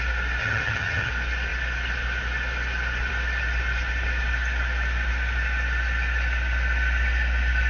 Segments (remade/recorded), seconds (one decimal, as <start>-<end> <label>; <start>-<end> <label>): 0.0-0.4 recorded; 0.4-1.1 remade; 1.1-7.7 recorded